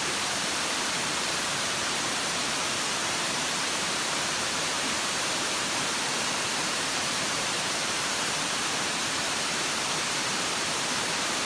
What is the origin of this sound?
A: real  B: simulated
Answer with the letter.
B